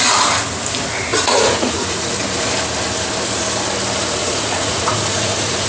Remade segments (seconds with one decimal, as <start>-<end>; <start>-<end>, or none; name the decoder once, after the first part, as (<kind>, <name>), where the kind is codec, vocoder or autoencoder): 1.1-2.1 (vocoder, Vocos); 4.2-5.7